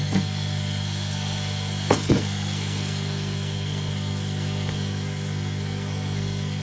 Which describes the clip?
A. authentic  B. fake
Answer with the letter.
B